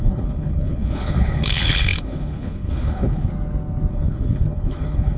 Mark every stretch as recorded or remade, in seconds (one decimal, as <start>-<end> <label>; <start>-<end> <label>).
0.0-3.3 remade; 3.3-3.9 recorded; 3.9-5.2 remade